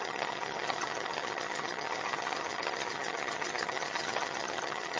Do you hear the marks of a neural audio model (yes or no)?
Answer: yes